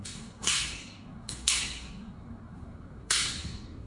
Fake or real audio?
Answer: fake